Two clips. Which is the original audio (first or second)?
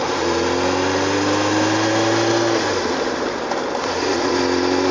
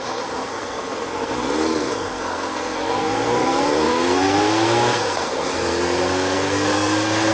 first